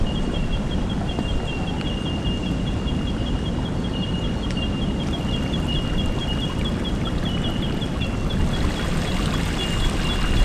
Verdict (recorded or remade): recorded